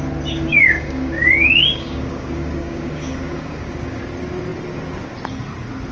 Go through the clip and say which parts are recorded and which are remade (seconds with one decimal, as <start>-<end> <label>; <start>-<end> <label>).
0.0-0.5 recorded; 0.5-4.0 remade; 4.0-5.9 recorded